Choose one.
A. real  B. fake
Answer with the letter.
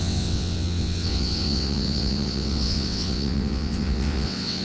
B